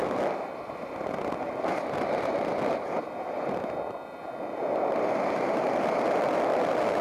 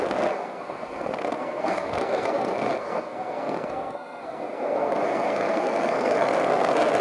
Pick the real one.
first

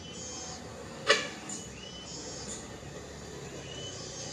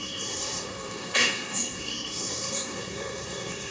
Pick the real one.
first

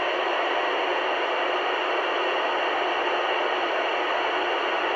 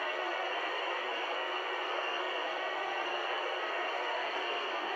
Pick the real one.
first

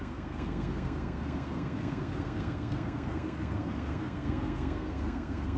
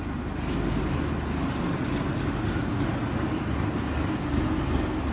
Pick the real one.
second